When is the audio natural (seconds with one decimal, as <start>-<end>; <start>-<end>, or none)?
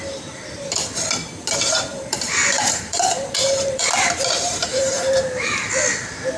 0.0-1.9; 5.7-6.4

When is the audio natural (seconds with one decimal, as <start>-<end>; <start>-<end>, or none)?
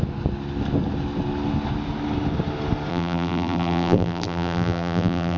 0.0-2.9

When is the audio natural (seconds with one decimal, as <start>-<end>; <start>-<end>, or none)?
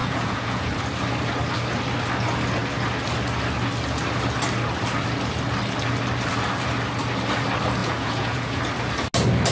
0.7-7.8; 8.6-9.5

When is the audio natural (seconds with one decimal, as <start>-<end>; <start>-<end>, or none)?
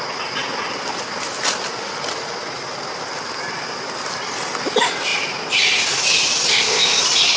0.0-6.5; 7.0-7.4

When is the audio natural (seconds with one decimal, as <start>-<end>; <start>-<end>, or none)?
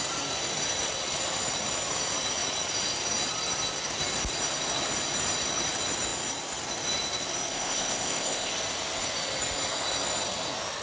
0.0-7.5; 8.5-10.8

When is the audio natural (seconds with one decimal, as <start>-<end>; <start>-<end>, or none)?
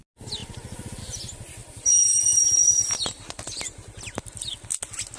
0.0-1.6; 4.7-5.2